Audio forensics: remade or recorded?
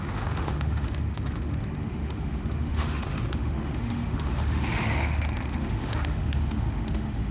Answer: remade